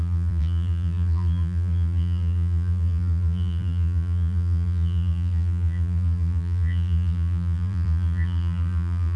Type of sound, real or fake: fake